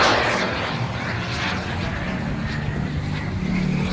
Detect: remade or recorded recorded